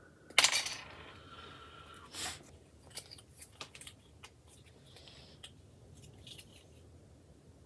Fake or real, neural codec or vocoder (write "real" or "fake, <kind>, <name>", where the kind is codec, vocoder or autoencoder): real